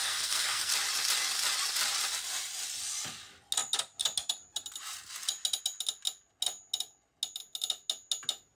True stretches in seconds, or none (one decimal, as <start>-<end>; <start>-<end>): 0.7-8.6

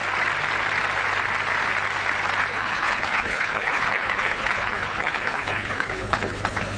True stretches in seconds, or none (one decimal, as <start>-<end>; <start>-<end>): 0.0-2.5

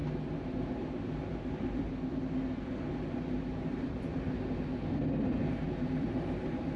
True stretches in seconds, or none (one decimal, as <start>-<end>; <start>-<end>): 0.0-5.4

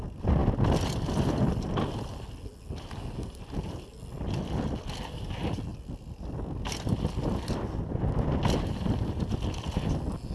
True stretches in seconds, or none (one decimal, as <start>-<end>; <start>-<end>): 0.0-10.3

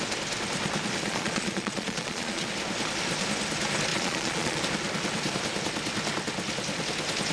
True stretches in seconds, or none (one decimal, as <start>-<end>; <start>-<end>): 0.0-1.0; 2.5-3.9; 4.6-7.3